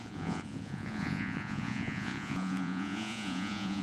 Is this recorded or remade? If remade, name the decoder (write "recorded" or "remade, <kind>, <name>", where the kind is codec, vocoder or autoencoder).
remade, vocoder, Vocos